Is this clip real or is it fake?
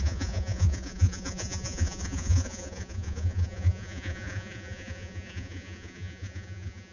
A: fake